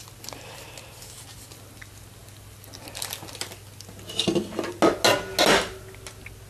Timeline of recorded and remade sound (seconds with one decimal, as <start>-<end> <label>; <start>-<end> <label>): 0.0-6.5 recorded